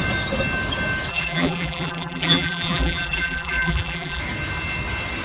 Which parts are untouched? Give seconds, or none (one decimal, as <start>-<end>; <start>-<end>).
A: 0.0-1.1; 4.2-5.2